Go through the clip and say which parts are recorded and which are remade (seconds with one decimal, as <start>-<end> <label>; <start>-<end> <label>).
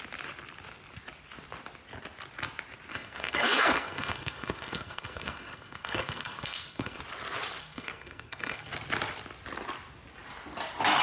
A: 0.0-2.9 recorded; 2.9-7.0 remade; 7.0-7.6 recorded; 7.6-8.7 remade; 8.7-11.0 recorded